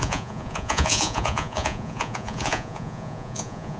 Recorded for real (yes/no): no